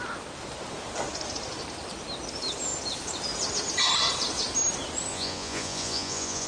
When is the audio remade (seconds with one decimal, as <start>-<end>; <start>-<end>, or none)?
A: 5.1-6.5

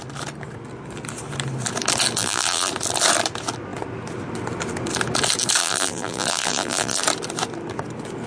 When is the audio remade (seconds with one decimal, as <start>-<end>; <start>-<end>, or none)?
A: 2.2-2.7; 5.6-7.0